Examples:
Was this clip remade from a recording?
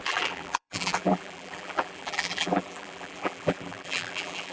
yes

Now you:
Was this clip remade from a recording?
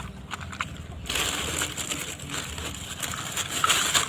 no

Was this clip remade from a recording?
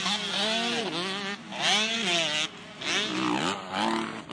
no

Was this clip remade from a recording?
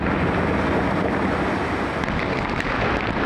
no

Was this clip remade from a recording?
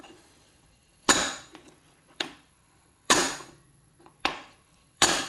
yes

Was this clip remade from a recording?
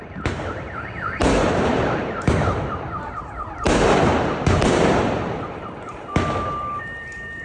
yes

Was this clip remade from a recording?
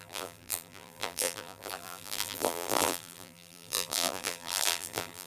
yes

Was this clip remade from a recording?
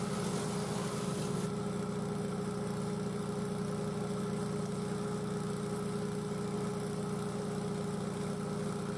no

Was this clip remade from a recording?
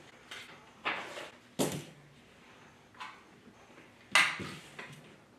no